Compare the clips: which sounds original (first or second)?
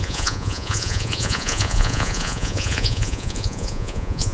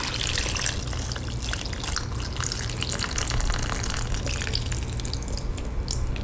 second